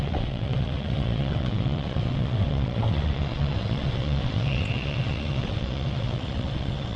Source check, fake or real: fake